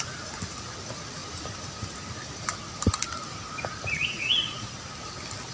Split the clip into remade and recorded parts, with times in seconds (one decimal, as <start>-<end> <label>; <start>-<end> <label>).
0.0-4.0 recorded; 4.0-4.7 remade; 4.7-5.5 recorded